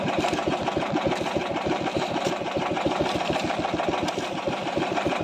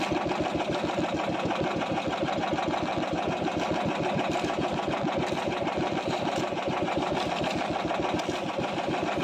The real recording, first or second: second